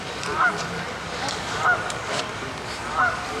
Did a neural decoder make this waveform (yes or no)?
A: yes